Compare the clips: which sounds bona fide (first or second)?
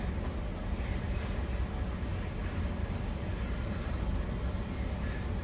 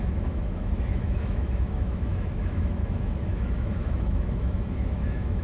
first